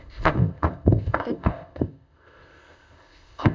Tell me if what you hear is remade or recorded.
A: remade